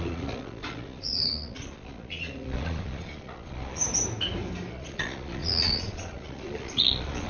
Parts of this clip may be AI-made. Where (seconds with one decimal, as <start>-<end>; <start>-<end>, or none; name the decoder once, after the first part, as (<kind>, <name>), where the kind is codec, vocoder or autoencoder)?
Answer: 0.0-3.8 (vocoder, Vocos); 4.7-7.3